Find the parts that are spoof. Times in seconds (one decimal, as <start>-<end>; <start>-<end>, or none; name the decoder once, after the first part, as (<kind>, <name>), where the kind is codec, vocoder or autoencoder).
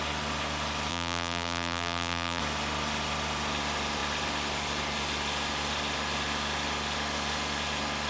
0.9-2.4 (vocoder, BigVGAN v2)